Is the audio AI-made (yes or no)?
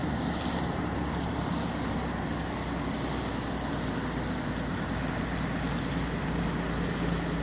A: no